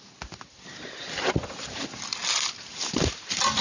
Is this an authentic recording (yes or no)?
yes